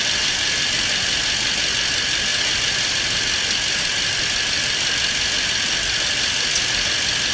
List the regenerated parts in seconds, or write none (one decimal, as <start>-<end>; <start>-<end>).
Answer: none